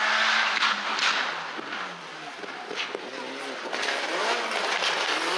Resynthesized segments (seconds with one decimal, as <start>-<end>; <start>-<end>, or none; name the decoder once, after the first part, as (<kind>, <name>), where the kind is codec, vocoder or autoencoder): none